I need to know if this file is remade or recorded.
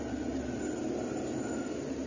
recorded